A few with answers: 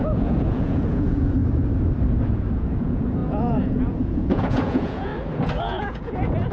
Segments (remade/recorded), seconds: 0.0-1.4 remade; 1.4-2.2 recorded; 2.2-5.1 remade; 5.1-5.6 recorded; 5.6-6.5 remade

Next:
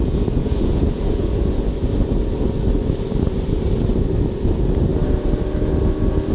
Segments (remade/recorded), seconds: 0.0-1.6 remade; 1.6-6.3 recorded

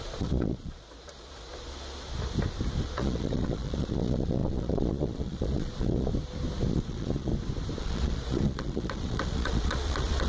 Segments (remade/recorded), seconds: 0.0-1.5 remade; 1.5-2.8 recorded; 2.8-6.1 remade; 6.1-6.7 recorded; 6.7-7.3 remade; 7.3-7.8 recorded; 7.8-10.3 remade

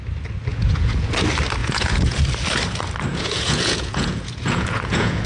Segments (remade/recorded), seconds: 0.0-0.5 recorded; 0.5-1.1 remade; 1.1-1.6 recorded; 1.6-2.2 remade; 2.2-3.1 recorded; 3.1-5.3 remade